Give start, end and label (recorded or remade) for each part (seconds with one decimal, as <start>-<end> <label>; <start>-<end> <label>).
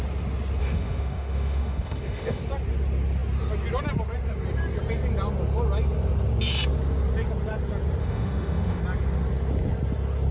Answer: 0.0-0.6 recorded; 0.6-2.4 remade; 2.4-8.0 recorded; 8.0-8.8 remade; 8.8-10.3 recorded